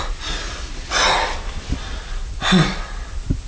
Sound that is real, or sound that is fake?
real